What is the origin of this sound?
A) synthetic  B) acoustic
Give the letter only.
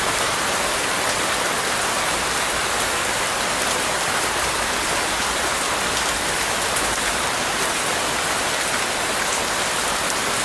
A